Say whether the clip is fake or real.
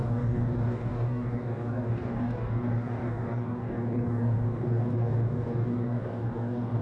fake